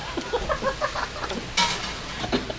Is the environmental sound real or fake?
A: real